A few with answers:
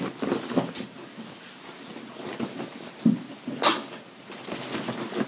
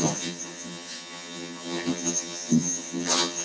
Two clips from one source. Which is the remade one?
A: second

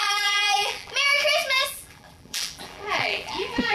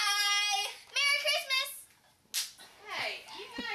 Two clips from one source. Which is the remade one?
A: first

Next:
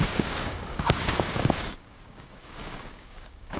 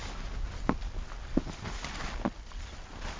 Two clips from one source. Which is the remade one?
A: first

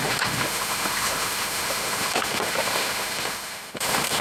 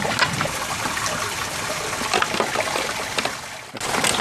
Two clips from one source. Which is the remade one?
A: first